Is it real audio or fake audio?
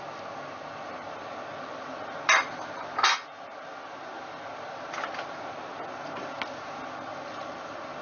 real